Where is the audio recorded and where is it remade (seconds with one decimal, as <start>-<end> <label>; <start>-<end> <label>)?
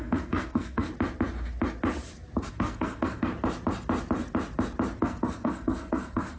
0.0-0.9 remade; 0.9-2.5 recorded; 2.5-3.3 remade; 3.3-5.0 recorded; 5.0-6.4 remade